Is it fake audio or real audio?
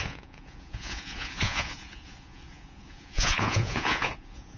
fake